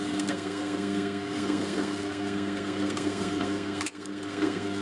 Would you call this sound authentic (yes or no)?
no